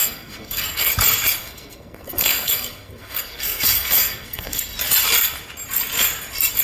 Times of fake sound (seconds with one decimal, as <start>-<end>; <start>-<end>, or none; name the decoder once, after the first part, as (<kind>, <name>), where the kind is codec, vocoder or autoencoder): 0.0-0.9 (codec, SNAC); 1.4-4.6